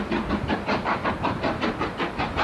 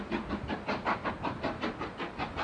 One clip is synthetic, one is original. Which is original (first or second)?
second